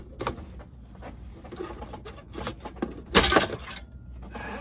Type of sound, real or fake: real